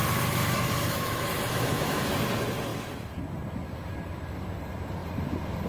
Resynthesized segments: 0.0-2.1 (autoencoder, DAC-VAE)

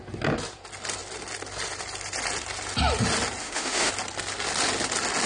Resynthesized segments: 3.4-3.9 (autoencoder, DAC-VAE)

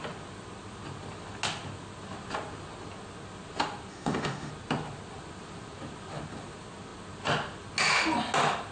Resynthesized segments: 3.9-4.5 (autoencoder, DAC-VAE)

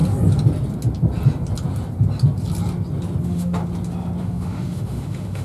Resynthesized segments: 3.2-3.6 (autoencoder, DAC-VAE); 4.2-5.4

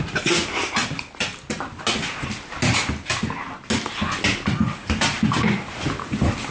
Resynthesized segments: none

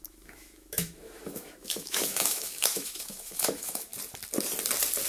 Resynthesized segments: 0.0-3.9 (autoencoder, DAC-VAE)